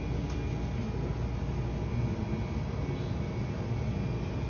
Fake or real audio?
real